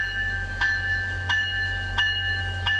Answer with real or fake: fake